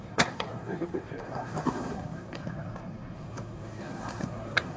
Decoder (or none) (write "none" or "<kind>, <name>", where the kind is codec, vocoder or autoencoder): codec, SNAC